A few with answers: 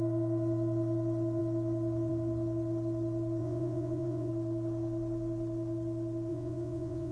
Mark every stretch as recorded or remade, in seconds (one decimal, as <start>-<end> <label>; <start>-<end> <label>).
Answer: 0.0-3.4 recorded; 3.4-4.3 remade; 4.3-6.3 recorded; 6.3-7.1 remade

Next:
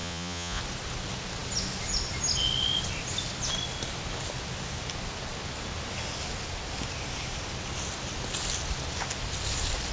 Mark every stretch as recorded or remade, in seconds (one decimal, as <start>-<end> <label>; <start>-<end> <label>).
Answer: 0.0-0.6 remade; 0.6-9.9 recorded

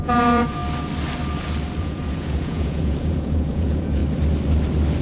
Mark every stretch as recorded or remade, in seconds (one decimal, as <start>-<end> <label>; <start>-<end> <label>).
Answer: 0.0-0.6 remade; 0.6-1.8 recorded; 1.8-4.0 remade; 4.0-5.0 recorded

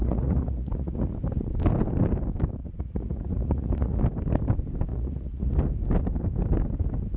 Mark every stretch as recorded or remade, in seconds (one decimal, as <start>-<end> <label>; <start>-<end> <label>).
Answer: 0.0-1.1 remade; 1.1-2.6 recorded; 2.6-4.0 remade; 4.0-4.9 recorded; 4.9-5.5 remade; 5.5-7.2 recorded

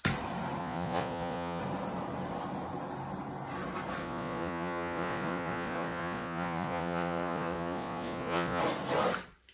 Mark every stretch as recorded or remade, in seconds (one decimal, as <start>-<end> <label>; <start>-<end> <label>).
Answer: 0.0-0.6 recorded; 0.6-1.6 remade; 1.6-4.0 recorded; 4.0-8.6 remade; 8.6-9.5 recorded

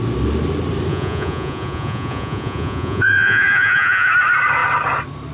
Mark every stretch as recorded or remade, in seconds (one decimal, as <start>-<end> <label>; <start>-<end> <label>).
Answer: 0.0-0.9 recorded; 0.9-4.1 remade; 4.1-5.3 recorded

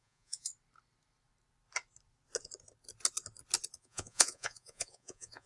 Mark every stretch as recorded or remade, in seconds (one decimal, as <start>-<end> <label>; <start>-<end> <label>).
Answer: 0.0-0.5 remade; 0.5-3.8 recorded; 3.8-5.5 remade